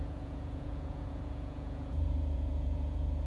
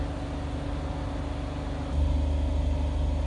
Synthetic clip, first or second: first